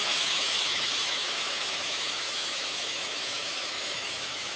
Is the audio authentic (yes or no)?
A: no